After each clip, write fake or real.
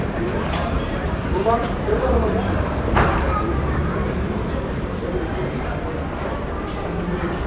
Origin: fake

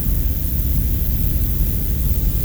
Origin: real